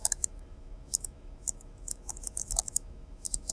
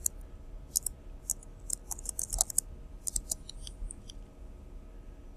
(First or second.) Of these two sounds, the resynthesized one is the first